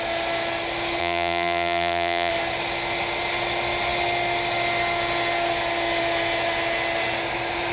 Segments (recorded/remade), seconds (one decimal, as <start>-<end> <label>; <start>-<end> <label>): 0.0-1.0 recorded; 1.0-2.3 remade; 2.3-7.7 recorded